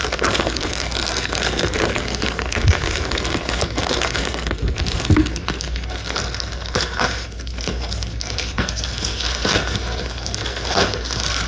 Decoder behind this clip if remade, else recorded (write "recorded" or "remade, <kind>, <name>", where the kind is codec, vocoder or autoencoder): remade, codec, SNAC